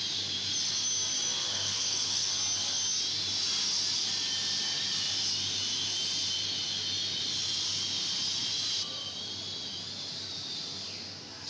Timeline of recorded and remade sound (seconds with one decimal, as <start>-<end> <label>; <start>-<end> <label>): 0.0-1.5 recorded; 1.5-2.3 remade; 2.3-11.5 recorded